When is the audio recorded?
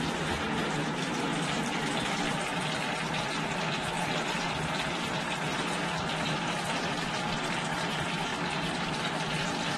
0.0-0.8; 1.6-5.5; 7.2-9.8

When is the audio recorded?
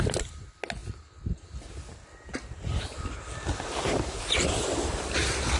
0.0-5.6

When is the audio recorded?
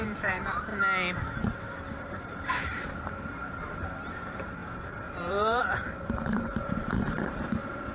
0.7-1.4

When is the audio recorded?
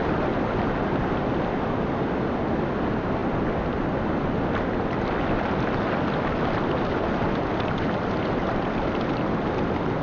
0.0-10.0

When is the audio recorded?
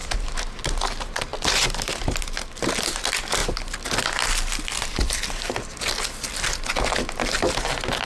0.6-8.0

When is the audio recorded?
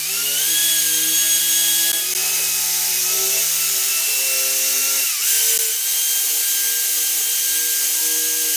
0.6-1.4; 3.9-8.0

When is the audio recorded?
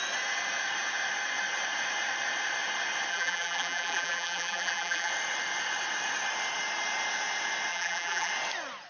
0.0-3.1; 5.1-7.7; 8.3-8.9